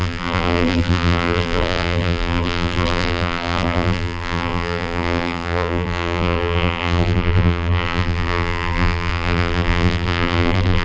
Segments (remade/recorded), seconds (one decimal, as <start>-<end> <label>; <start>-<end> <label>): 0.0-10.8 remade